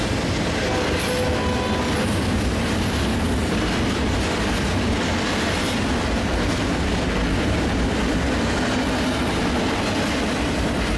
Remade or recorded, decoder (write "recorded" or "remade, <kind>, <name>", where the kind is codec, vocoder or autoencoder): recorded